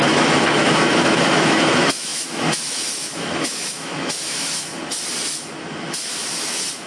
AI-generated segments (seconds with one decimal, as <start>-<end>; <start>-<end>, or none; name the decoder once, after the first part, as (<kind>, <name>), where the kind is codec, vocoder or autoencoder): 0.0-4.7 (autoencoder, DAC-VAE); 5.8-6.9

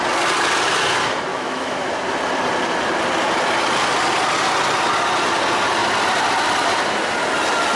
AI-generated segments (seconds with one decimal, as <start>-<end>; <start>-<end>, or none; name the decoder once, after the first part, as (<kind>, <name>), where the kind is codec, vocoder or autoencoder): 1.3-1.9 (autoencoder, DAC-VAE)

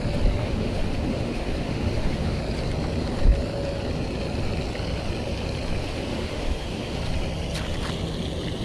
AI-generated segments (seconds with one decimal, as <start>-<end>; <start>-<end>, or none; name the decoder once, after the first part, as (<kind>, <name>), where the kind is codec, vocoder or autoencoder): 0.4-2.4 (autoencoder, DAC-VAE); 5.8-7.0

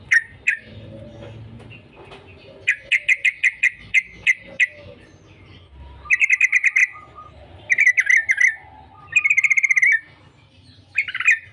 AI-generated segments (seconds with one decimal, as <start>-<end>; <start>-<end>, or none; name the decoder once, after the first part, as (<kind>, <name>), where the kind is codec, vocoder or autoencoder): none

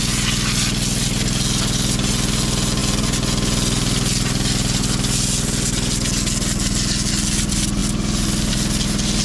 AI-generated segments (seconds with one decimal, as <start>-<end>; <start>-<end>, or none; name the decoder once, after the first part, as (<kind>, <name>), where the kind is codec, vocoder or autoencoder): none